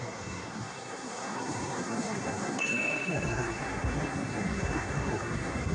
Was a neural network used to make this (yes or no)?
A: yes